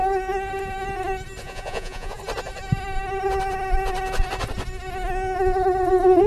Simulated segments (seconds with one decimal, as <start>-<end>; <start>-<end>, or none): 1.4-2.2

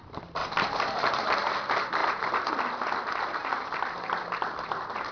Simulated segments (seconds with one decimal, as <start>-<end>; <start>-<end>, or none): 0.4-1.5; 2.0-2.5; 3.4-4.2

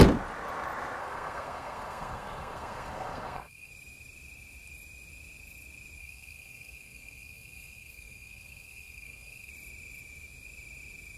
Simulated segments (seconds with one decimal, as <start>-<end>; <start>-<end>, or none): 1.0-3.7; 6.0-9.5

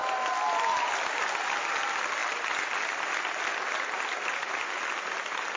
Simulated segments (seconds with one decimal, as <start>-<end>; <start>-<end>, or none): none